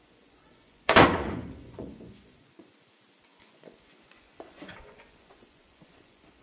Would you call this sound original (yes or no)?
no